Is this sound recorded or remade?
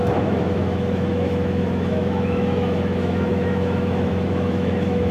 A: remade